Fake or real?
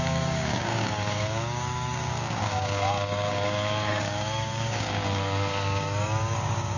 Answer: fake